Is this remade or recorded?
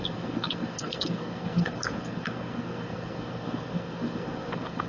remade